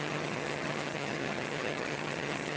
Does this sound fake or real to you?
fake